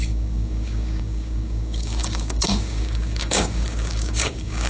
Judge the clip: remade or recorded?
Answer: remade